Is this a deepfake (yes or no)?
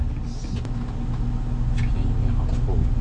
no